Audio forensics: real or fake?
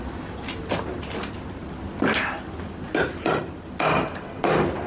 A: real